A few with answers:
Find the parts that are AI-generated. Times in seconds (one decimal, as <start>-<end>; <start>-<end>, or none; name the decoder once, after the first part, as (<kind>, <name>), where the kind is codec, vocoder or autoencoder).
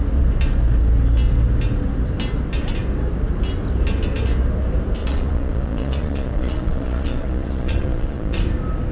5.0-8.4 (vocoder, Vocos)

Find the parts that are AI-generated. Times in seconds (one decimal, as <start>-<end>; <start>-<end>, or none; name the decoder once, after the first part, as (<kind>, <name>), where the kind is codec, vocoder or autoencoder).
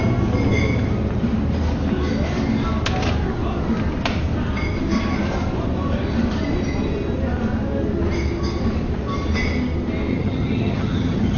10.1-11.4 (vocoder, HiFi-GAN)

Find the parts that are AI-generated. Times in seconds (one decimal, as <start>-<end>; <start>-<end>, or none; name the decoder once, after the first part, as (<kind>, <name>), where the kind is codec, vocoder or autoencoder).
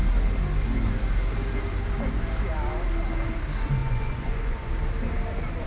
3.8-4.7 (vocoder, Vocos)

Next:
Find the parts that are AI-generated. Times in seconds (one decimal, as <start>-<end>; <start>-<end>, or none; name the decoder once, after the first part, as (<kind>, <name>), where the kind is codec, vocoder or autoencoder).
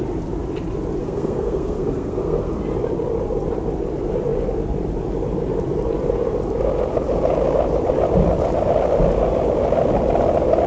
1.0-2.6 (codec, SNAC)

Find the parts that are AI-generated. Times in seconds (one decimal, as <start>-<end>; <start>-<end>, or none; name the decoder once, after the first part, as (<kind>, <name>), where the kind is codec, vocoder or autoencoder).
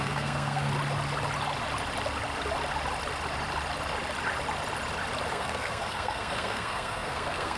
0.0-0.7 (codec, SNAC); 5.3-7.6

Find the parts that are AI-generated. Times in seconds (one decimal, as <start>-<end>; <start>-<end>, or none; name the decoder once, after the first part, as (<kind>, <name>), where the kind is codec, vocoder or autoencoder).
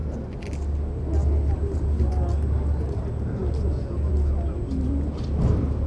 none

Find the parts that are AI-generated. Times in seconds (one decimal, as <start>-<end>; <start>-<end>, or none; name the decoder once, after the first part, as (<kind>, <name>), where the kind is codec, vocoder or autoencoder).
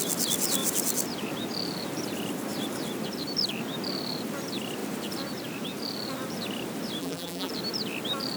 7.0-7.5 (vocoder, BigVGAN v2)